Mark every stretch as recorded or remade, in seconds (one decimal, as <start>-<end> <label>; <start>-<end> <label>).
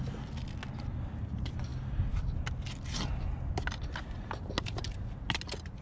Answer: 0.0-5.8 recorded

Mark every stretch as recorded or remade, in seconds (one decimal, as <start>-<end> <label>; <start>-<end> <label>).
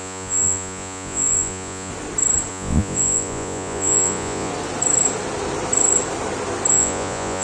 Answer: 0.0-1.9 remade; 1.9-2.5 recorded; 2.5-4.5 remade; 4.5-6.7 recorded; 6.7-7.4 remade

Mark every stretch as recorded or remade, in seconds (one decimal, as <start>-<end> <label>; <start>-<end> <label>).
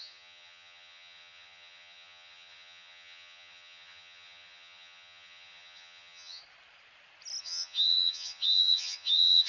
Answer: 0.0-6.4 remade; 6.4-7.4 recorded; 7.4-9.5 remade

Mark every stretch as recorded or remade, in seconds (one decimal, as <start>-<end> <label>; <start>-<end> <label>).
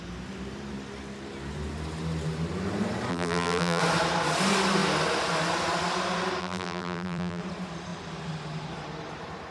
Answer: 0.0-3.1 recorded; 3.1-3.8 remade; 3.8-6.4 recorded; 6.4-7.4 remade; 7.4-9.5 recorded